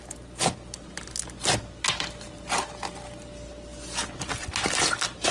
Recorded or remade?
recorded